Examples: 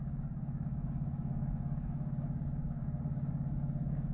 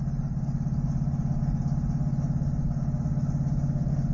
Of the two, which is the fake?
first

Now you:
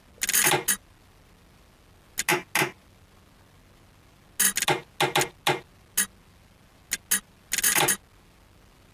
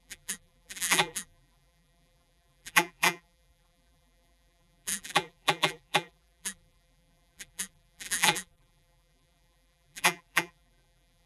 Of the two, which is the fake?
second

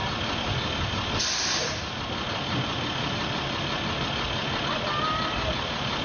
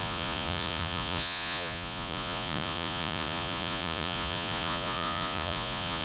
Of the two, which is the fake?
second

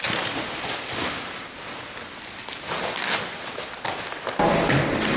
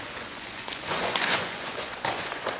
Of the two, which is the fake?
second